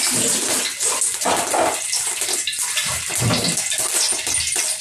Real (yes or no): yes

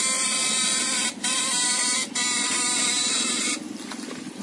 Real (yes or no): no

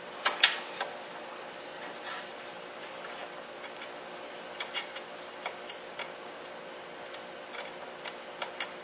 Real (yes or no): yes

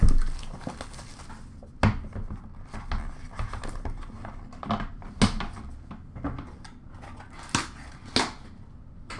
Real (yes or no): yes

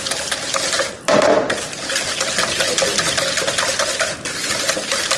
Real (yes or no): yes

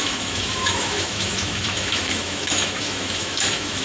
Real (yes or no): no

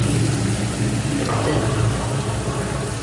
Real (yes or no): yes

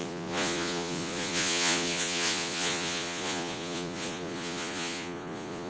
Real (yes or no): no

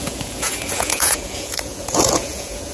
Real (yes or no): no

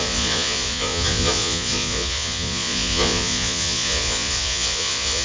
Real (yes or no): no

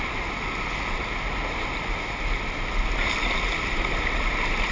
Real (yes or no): yes